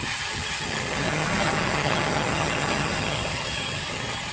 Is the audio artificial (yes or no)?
yes